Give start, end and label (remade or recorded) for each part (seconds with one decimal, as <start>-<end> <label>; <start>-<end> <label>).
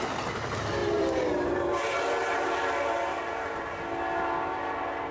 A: 0.0-0.8 recorded; 0.8-3.7 remade; 3.7-5.1 recorded